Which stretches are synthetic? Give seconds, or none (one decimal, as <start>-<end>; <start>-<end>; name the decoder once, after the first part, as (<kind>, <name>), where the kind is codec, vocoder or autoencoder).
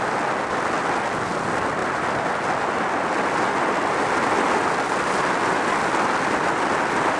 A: none